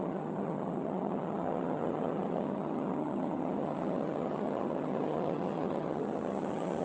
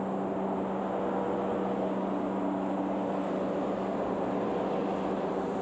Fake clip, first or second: first